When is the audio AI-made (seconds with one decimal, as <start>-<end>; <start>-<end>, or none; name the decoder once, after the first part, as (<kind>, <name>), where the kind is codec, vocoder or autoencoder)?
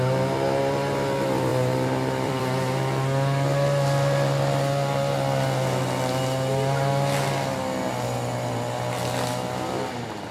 1.5-2.4 (vocoder, BigVGAN v2)